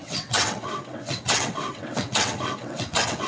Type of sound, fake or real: fake